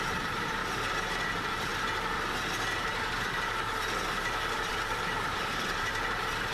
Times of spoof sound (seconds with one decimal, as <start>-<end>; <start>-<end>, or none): 0.0-0.6; 1.2-1.7; 4.5-6.5